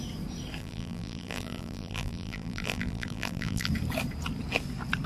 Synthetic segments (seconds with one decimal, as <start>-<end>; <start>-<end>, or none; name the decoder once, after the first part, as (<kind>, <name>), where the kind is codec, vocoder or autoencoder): 0.6-3.7 (vocoder, BigVGAN v2)

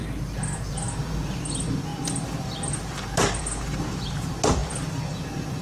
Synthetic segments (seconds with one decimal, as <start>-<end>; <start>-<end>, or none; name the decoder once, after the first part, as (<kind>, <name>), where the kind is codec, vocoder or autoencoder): none

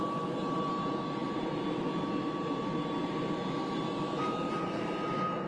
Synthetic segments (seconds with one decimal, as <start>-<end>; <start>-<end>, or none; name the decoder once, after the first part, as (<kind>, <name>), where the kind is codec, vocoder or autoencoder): none

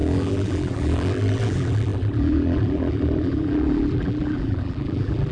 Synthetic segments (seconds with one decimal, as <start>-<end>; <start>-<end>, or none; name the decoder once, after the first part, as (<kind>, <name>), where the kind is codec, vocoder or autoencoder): 0.0-5.3 (vocoder, BigVGAN v2)

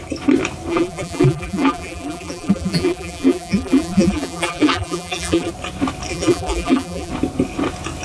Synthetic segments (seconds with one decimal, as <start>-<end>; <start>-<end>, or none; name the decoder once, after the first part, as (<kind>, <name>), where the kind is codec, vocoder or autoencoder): 0.7-5.5 (vocoder, BigVGAN v2); 6.1-7.1

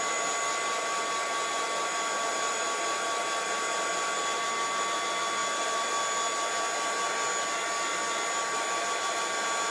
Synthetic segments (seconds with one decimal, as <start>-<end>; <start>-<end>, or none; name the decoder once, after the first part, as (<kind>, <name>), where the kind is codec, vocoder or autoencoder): 5.4-5.9 (vocoder, BigVGAN v2)

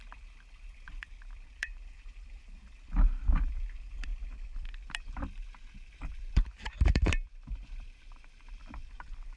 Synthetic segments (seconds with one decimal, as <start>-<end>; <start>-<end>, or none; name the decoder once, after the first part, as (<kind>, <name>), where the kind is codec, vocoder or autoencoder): 0.0-9.4 (vocoder, BigVGAN v2)

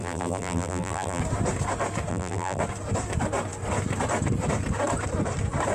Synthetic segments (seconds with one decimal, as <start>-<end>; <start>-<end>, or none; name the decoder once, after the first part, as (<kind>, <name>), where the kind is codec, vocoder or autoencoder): 0.0-1.2 (vocoder, BigVGAN v2); 2.1-2.6